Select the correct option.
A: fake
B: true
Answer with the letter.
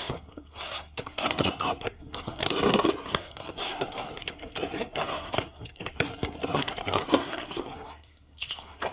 A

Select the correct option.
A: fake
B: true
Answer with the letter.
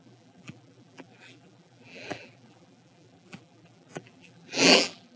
A